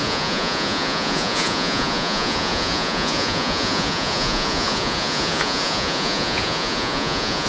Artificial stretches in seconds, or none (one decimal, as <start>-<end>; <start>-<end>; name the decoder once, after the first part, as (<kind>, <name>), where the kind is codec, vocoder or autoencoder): 0.0-7.5 (vocoder, Vocos)